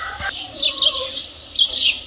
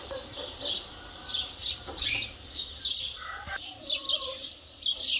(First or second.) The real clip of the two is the second